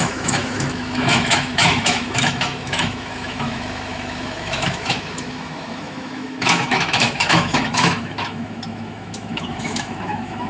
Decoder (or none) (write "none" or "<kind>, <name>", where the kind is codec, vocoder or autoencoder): autoencoder, DAC-VAE